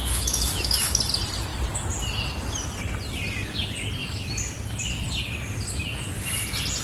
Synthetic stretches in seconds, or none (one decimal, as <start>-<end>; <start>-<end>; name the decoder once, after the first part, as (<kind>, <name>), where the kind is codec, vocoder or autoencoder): 0.0-1.0 (autoencoder, DAC-VAE)